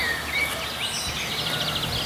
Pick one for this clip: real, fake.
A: real